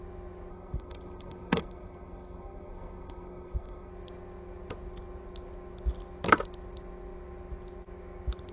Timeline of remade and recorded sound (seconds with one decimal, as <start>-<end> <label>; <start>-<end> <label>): 0.0-0.5 recorded; 0.5-3.9 remade; 3.9-8.5 recorded